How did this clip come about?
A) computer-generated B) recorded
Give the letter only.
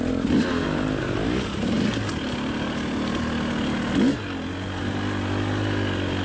B